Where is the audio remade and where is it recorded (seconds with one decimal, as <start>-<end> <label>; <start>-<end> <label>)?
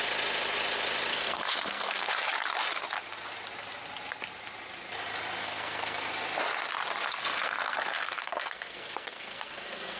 0.0-1.1 recorded; 1.1-2.1 remade; 2.1-5.4 recorded; 5.4-6.1 remade; 6.1-7.2 recorded; 7.2-10.0 remade